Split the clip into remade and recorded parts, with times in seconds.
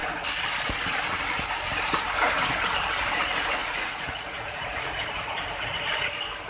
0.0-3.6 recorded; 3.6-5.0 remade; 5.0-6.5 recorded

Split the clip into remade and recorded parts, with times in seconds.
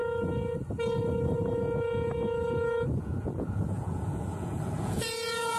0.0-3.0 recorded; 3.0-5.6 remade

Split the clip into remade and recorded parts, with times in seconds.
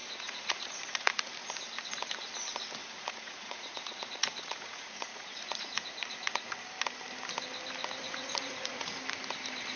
0.0-1.3 remade; 1.3-2.8 recorded; 2.8-6.5 remade; 6.5-8.0 recorded; 8.0-8.8 remade; 8.8-9.8 recorded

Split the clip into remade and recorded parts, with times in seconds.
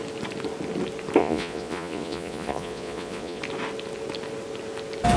0.0-1.2 recorded; 1.2-3.4 remade; 3.4-5.2 recorded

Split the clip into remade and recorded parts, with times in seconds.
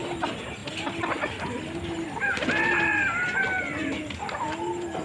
0.0-5.0 recorded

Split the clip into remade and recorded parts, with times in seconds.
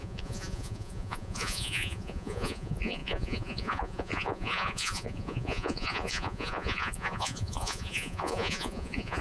0.0-9.2 remade